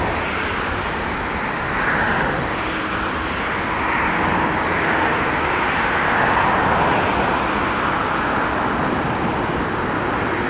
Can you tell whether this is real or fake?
real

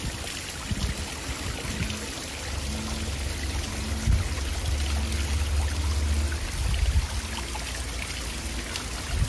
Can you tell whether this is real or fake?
real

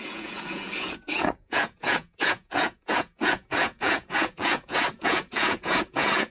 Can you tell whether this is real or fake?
fake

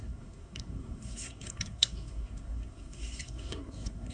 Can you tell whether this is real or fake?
fake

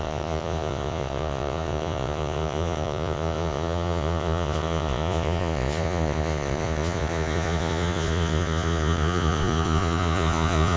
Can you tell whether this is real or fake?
fake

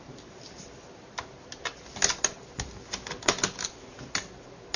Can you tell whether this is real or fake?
real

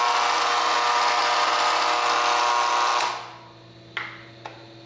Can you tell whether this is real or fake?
real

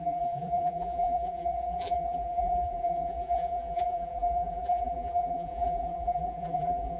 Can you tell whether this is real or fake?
fake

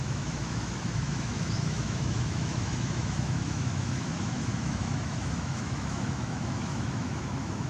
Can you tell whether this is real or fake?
fake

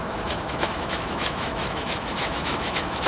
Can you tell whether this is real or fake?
fake